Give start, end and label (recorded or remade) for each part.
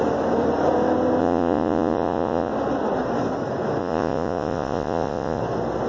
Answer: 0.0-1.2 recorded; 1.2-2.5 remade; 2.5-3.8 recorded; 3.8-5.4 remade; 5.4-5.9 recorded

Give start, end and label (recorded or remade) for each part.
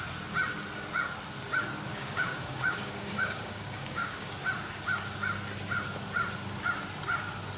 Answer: 0.0-1.9 recorded; 1.9-4.3 remade; 4.3-7.6 recorded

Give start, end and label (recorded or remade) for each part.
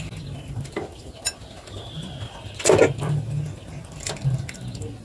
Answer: 0.0-5.0 recorded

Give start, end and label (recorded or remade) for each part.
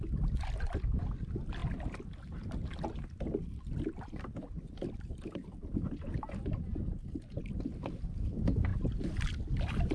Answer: 0.0-1.6 recorded; 1.6-4.3 remade; 4.3-9.9 recorded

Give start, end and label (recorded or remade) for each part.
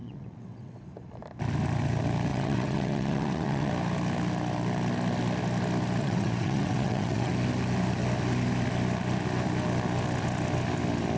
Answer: 0.0-0.8 remade; 0.8-2.3 recorded; 2.3-3.7 remade; 3.7-6.0 recorded; 6.0-7.3 remade; 7.3-11.2 recorded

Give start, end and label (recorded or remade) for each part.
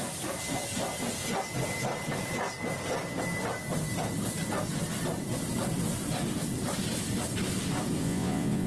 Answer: 0.0-8.0 recorded; 8.0-8.7 remade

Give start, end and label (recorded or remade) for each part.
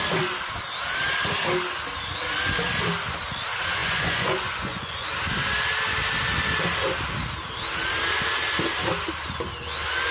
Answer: 0.0-3.8 recorded; 3.8-5.1 remade; 5.1-10.1 recorded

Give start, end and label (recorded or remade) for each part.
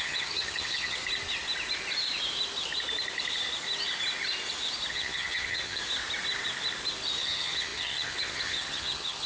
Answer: 0.0-1.0 remade; 1.0-4.9 recorded; 4.9-5.8 remade; 5.8-7.2 recorded; 7.2-9.3 remade